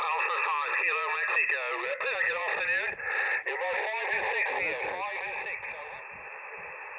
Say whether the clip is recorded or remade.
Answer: recorded